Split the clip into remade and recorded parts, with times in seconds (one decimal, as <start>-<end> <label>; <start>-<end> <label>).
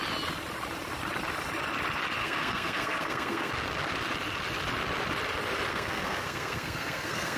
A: 0.0-2.2 recorded; 2.2-3.5 remade; 3.5-5.7 recorded; 5.7-7.4 remade